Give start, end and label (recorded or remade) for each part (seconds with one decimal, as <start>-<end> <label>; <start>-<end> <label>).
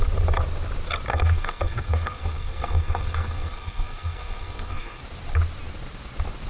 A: 0.0-1.1 recorded; 1.1-5.0 remade; 5.0-6.5 recorded